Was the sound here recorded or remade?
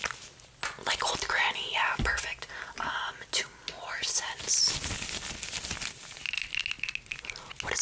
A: recorded